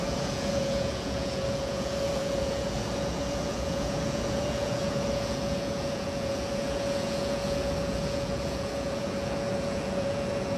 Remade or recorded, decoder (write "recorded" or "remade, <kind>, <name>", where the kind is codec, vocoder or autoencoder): remade, vocoder, Vocos